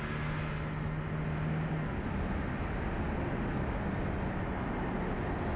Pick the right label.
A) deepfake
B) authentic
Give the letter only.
B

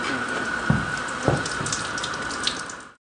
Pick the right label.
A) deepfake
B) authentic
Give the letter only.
B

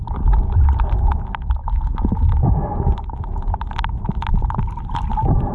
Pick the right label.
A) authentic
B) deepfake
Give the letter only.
A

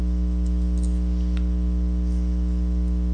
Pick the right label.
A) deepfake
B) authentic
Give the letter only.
B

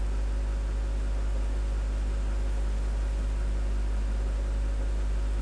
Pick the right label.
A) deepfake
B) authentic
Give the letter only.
B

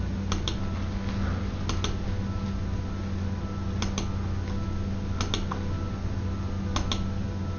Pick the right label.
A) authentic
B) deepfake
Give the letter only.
A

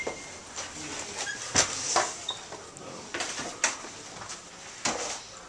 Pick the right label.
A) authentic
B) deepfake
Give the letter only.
A